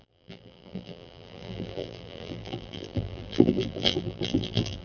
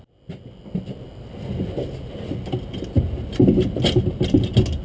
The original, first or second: second